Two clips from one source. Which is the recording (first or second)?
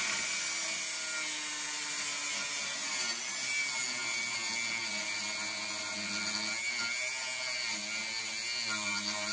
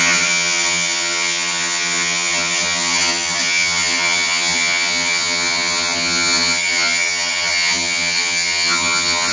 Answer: first